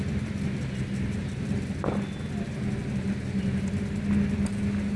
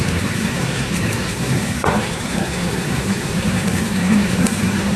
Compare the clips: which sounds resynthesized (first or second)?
second